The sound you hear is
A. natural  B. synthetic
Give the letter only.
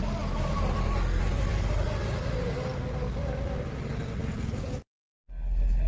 A